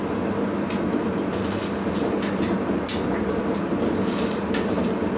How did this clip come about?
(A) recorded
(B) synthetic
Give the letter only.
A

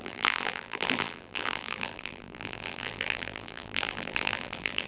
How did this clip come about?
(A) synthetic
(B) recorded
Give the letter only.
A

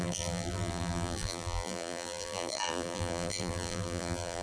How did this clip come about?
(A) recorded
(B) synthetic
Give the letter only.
B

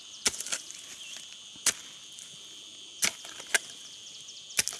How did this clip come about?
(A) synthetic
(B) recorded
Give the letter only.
B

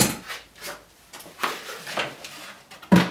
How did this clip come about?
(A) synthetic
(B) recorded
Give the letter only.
B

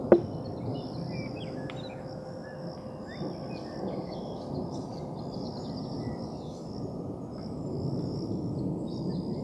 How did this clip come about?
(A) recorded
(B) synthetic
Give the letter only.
A